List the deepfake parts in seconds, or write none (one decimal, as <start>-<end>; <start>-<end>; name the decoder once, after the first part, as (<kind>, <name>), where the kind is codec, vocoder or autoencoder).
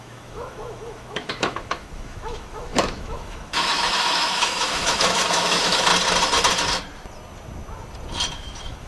0.0-5.9 (autoencoder, DAC-VAE); 8.3-8.9